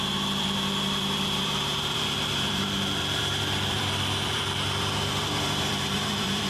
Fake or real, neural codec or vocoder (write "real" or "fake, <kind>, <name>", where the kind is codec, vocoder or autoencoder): fake, vocoder, BigVGAN v2